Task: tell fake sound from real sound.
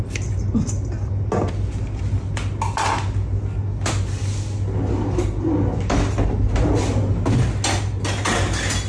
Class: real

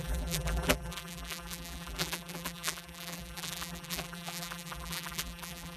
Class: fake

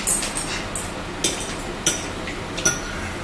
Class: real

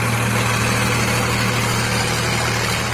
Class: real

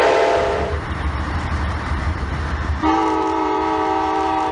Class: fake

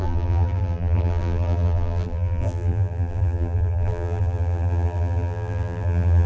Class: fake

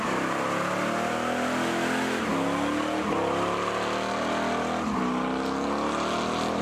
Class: real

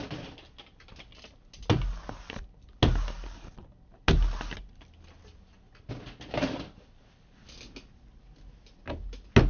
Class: real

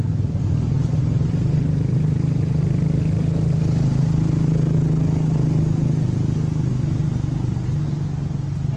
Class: real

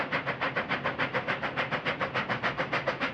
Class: real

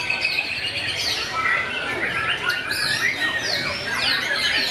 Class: real